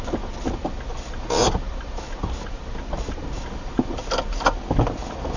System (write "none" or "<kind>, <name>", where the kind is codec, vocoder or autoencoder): none